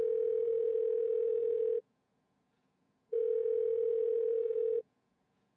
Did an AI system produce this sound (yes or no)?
yes